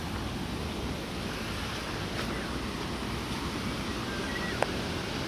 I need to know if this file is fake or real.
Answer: real